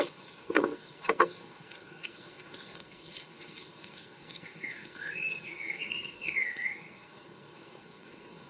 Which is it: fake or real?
fake